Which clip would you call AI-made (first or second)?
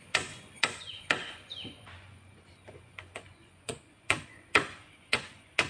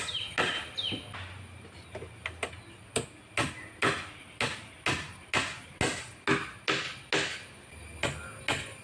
first